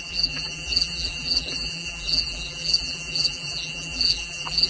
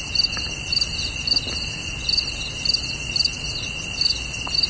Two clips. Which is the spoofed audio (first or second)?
first